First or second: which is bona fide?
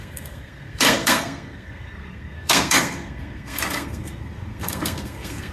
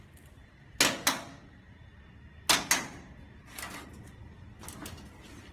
second